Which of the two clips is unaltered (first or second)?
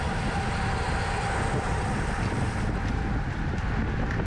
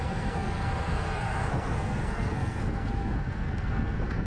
first